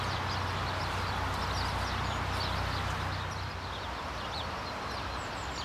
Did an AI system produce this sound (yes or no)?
no